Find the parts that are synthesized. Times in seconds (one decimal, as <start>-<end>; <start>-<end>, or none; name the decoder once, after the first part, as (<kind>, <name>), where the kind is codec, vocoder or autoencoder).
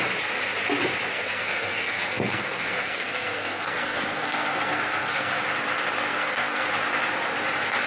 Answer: 1.1-5.4 (codec, SNAC); 6.1-6.7